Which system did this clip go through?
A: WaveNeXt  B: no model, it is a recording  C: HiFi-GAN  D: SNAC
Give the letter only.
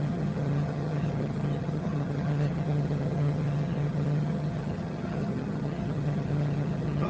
C